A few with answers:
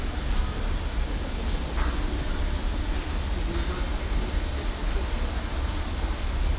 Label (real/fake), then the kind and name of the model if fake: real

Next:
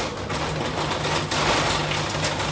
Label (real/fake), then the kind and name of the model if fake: real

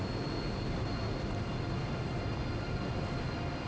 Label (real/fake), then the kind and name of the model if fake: real